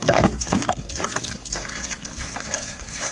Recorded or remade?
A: remade